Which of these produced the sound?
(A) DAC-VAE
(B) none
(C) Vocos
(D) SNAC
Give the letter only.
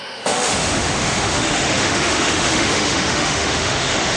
A